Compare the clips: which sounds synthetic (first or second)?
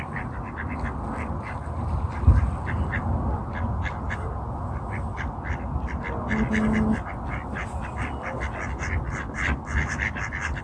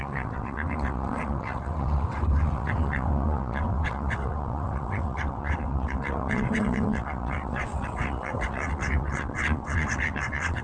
second